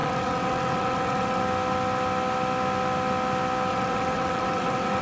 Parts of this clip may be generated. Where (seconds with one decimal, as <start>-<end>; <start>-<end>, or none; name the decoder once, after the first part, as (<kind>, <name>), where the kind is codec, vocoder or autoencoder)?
0.0-1.4 (vocoder, WaveNeXt); 3.7-5.0